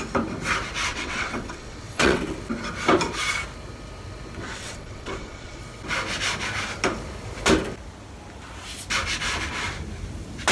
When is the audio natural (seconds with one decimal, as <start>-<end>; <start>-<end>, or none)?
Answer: 0.0-0.9; 2.2-4.4; 5.6-10.5